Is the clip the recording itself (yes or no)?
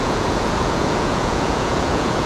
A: no